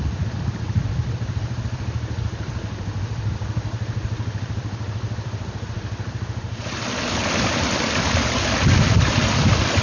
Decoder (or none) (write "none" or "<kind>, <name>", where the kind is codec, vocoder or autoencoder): vocoder, BigVGAN v2